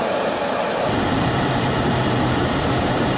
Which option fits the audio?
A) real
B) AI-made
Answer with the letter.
B